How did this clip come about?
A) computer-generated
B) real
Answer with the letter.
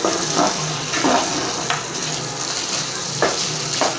B